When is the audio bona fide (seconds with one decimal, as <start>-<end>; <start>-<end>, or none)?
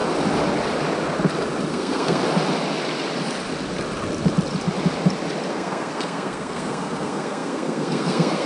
0.0-1.7; 2.2-5.5